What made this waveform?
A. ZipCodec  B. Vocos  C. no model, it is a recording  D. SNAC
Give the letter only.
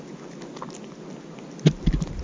C